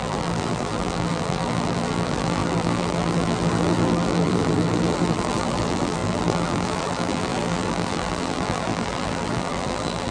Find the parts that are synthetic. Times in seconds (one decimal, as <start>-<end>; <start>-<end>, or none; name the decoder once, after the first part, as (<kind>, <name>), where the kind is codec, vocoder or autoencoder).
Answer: 0.0-10.1 (vocoder, BigVGAN v2)